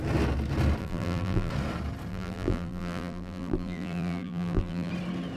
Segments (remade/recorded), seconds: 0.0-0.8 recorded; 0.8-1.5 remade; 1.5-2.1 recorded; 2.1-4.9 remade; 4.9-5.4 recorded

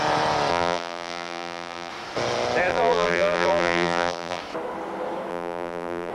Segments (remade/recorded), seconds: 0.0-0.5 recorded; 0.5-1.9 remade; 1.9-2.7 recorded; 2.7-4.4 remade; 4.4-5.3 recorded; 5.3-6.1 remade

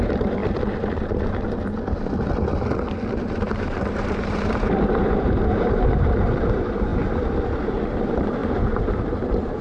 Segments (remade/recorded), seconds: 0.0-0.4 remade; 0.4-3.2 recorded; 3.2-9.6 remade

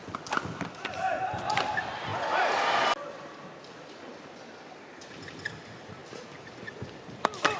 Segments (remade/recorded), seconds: 0.0-7.6 recorded

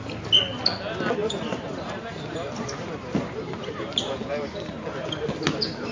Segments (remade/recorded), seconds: 0.0-1.2 recorded; 1.2-4.5 remade; 4.5-5.9 recorded

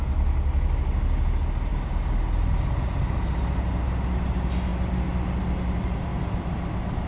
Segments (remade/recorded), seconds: 0.0-6.1 recorded; 6.1-7.1 remade